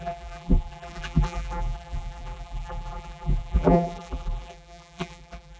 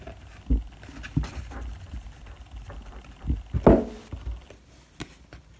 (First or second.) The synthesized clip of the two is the first